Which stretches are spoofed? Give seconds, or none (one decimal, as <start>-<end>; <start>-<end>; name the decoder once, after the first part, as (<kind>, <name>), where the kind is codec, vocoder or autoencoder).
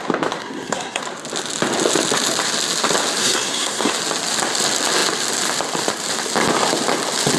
0.4-1.0 (codec, SNAC); 3.2-3.9